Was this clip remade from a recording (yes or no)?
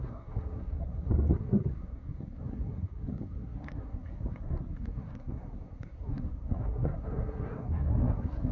yes